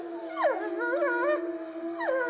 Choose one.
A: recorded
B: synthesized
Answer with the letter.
A